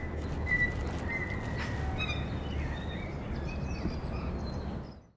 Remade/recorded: recorded